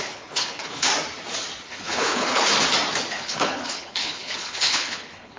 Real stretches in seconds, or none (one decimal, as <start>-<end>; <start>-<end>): 0.9-1.7; 2.5-3.1